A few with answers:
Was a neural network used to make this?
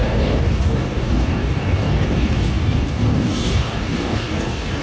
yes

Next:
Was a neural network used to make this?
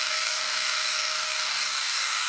yes